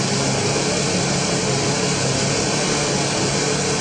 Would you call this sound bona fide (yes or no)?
yes